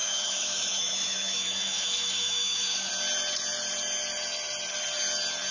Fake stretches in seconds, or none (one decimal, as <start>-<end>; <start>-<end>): 0.0-2.9